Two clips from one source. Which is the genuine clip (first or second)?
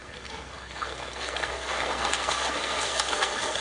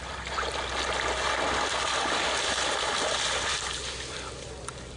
second